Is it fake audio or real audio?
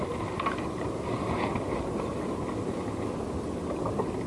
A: real